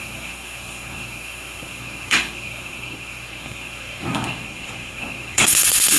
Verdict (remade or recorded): remade